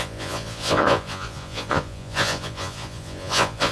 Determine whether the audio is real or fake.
fake